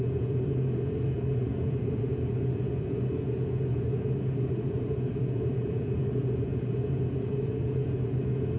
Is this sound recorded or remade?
remade